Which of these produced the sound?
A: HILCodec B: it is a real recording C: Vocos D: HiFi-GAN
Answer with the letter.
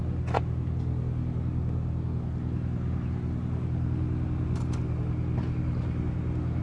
B